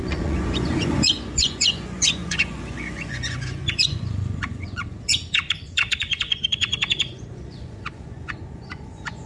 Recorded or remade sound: remade